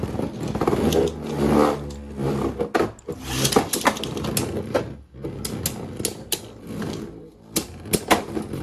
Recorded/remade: recorded